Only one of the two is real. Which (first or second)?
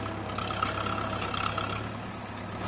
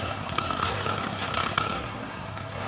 first